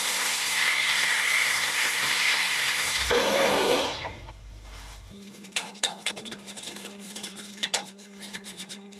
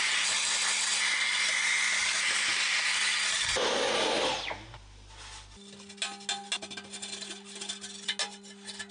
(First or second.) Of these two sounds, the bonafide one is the second